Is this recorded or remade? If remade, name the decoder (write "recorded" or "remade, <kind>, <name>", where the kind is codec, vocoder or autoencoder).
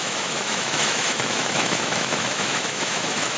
remade, autoencoder, DAC-VAE